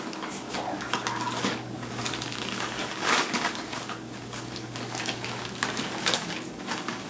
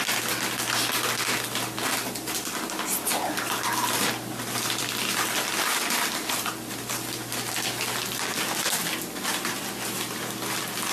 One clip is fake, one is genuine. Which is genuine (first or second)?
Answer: second